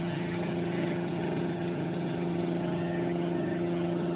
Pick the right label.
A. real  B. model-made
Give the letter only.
B